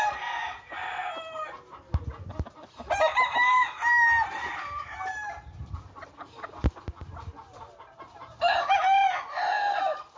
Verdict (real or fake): real